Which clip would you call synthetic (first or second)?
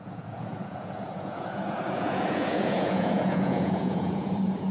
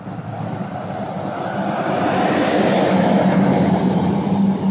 first